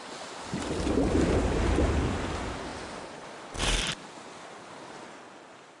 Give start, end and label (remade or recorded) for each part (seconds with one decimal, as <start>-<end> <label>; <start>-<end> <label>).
0.0-5.8 recorded